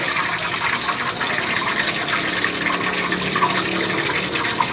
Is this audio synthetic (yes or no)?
no